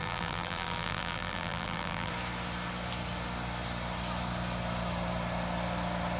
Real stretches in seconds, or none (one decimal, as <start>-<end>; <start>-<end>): 2.1-6.2